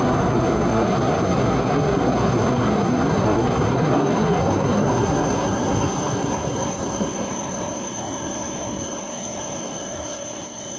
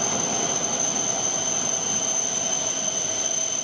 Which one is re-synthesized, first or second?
first